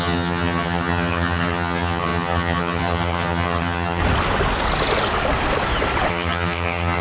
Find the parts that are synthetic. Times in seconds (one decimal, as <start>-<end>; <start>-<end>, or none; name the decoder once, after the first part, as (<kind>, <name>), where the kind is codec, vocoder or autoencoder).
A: 0.0-4.0 (vocoder, HiFi-GAN); 6.1-7.0